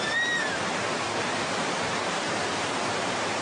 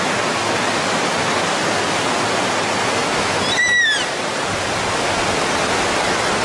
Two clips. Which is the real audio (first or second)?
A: second